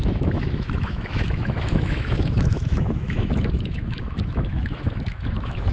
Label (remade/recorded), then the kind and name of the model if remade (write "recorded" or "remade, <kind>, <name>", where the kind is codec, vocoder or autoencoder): remade, autoencoder, DAC-VAE